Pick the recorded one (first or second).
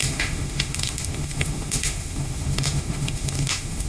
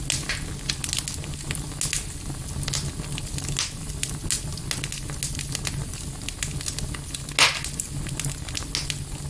second